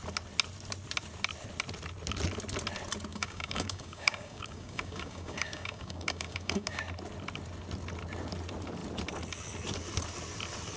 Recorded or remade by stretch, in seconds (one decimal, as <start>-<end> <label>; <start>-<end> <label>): 0.0-3.1 recorded; 3.1-6.8 remade; 6.8-10.8 recorded